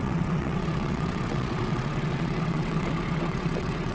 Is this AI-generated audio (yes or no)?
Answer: yes